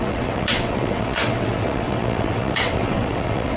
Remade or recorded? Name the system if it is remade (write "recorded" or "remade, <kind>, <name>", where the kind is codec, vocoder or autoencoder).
remade, vocoder, WaveNeXt